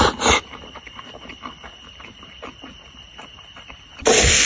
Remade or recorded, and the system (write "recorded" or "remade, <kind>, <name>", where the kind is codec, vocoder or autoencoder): recorded